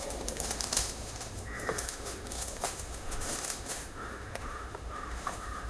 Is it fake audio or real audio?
fake